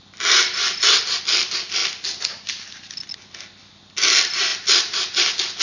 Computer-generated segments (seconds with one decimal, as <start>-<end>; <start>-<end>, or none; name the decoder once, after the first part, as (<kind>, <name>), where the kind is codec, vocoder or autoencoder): none